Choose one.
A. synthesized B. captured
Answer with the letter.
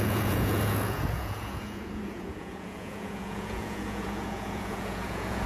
A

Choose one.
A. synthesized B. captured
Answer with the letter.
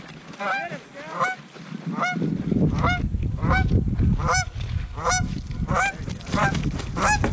B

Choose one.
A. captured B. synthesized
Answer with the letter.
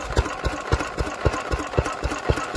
A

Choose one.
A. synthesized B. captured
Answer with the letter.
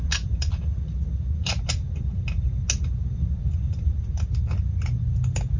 B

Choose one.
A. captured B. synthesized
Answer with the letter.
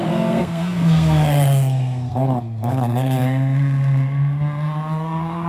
B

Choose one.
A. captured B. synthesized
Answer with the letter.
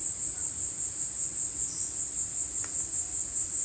A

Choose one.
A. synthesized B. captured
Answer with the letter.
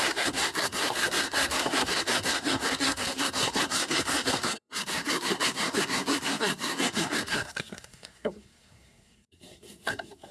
A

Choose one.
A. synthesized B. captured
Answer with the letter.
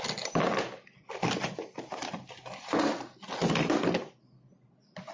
B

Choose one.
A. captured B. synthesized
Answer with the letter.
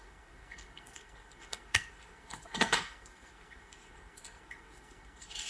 B